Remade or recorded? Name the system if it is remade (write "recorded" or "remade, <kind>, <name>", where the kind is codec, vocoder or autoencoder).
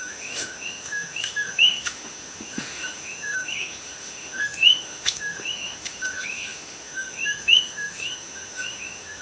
remade, autoencoder, DAC-VAE